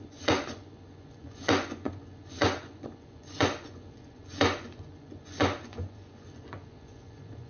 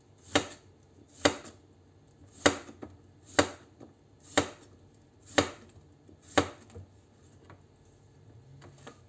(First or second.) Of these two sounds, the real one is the second